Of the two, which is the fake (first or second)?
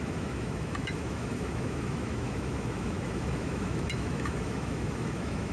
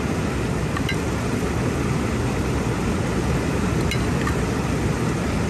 first